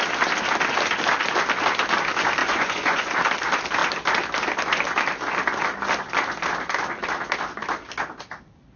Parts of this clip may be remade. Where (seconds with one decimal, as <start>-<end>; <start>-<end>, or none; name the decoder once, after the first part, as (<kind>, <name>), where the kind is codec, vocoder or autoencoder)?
2.4-3.1 (vocoder, Vocos)